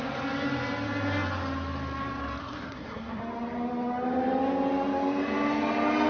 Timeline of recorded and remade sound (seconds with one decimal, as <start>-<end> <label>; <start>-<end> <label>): 0.0-2.4 recorded; 2.4-3.2 remade; 3.2-6.1 recorded